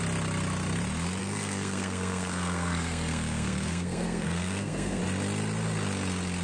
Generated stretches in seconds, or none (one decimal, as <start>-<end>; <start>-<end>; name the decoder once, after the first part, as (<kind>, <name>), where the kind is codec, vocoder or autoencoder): 1.2-5.0 (codec, SNAC)

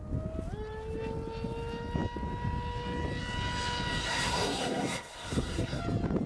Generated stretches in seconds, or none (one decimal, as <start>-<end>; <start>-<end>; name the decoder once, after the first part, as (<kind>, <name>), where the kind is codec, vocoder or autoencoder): 4.0-5.8 (codec, SNAC)